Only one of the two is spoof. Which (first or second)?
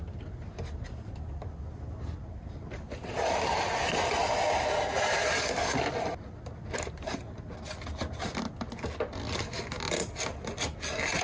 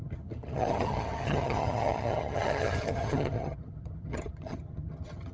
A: second